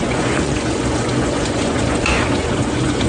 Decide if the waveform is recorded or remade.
remade